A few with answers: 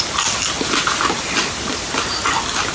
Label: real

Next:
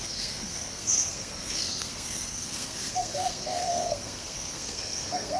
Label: fake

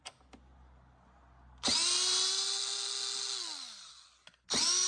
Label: real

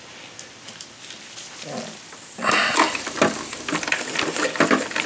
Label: real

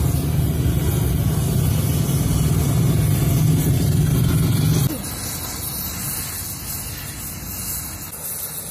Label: real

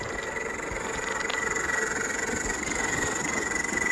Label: real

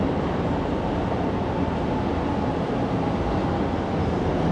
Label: real